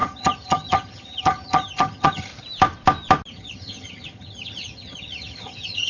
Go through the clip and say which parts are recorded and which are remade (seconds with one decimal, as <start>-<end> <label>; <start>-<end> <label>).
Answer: 0.0-2.3 remade; 2.3-3.3 recorded; 3.3-5.9 remade